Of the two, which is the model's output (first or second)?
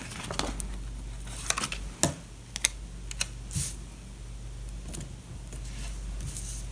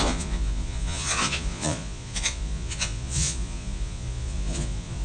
second